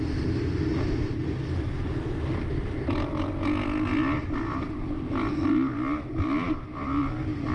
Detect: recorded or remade recorded